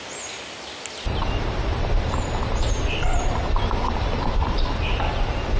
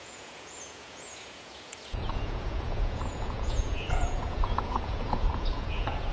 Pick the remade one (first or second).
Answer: second